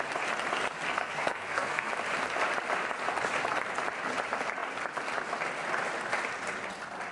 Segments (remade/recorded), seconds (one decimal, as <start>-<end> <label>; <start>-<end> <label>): 0.0-0.9 recorded; 0.9-1.9 remade; 1.9-7.1 recorded